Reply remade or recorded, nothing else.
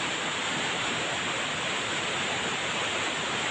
recorded